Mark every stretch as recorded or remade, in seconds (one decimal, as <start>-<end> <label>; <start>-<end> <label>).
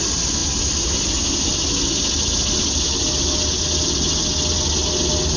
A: 0.0-5.4 recorded